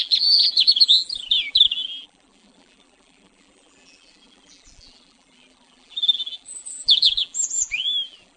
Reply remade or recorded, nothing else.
remade